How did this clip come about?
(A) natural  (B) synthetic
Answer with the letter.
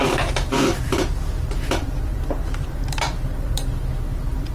B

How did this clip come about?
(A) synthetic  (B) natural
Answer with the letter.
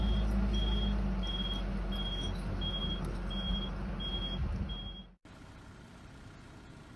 B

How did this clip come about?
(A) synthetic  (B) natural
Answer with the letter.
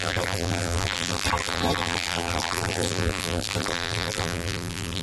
A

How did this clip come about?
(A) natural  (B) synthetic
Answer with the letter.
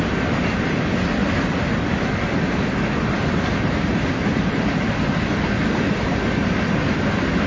A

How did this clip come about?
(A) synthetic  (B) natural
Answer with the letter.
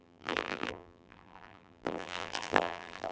A